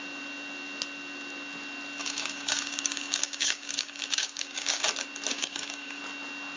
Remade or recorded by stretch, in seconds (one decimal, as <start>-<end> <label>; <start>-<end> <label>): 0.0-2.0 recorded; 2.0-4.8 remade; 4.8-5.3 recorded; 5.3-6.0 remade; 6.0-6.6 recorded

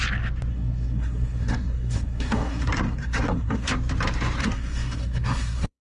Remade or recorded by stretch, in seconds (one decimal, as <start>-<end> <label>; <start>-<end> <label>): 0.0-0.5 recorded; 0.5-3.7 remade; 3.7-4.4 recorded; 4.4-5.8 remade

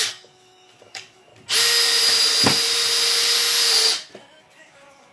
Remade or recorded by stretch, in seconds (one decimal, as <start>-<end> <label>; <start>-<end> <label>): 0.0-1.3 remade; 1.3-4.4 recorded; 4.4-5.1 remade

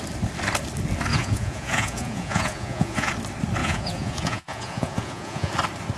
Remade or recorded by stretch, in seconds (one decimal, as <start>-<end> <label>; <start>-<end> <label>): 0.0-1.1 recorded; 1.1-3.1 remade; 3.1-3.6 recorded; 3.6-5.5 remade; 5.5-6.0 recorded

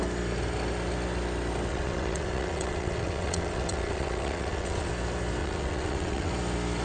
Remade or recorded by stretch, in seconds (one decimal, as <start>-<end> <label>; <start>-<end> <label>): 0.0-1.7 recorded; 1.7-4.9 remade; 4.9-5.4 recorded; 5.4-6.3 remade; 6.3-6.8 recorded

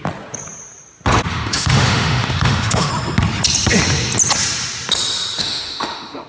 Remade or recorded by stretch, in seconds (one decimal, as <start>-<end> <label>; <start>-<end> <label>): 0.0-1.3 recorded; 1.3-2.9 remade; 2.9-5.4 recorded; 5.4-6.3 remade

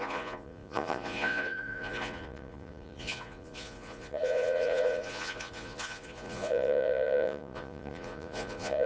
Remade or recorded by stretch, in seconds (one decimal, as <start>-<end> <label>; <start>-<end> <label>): 0.0-8.9 remade